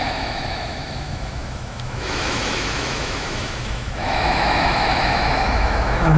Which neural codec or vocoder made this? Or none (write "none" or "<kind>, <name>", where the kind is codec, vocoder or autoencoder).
autoencoder, DAC-VAE